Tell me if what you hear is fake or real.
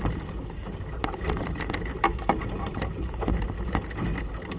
real